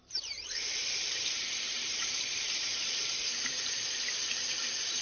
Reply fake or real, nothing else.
fake